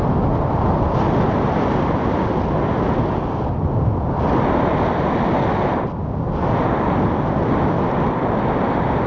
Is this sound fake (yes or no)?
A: no